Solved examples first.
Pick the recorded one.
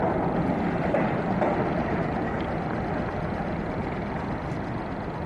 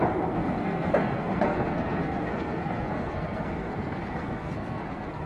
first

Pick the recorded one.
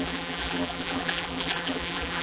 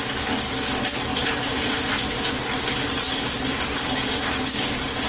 second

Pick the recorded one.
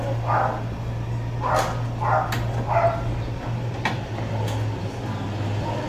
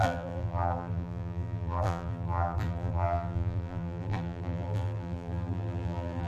first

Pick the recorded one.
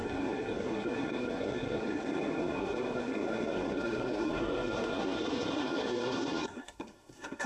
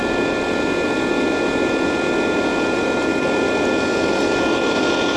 second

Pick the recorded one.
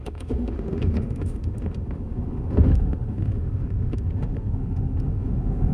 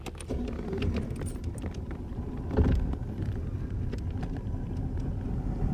second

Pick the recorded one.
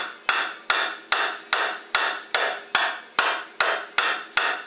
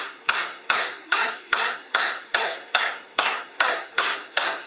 first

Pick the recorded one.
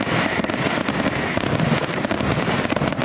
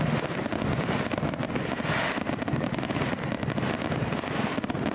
second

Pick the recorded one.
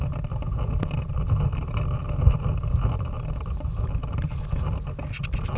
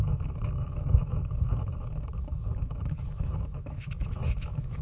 first